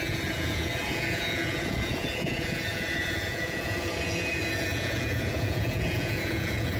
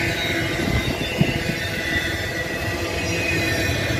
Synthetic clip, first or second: first